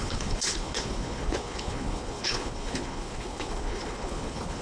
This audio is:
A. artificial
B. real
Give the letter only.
A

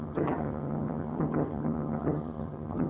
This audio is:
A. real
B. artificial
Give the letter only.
B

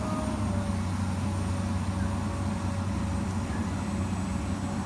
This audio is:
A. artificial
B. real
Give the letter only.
B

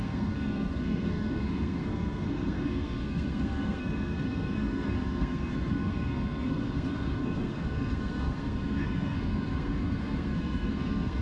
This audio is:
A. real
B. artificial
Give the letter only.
B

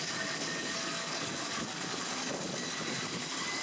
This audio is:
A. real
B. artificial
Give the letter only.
B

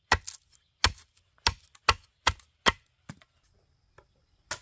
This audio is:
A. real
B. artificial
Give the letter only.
A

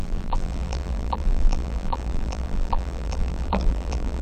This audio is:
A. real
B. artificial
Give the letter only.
B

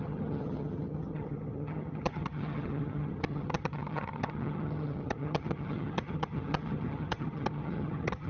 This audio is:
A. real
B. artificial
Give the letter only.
B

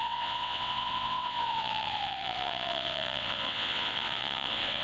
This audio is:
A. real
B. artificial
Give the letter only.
B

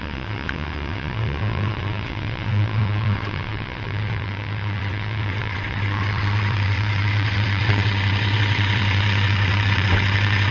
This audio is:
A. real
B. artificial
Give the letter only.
B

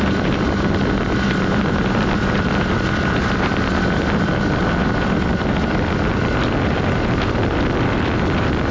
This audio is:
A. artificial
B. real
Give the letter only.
B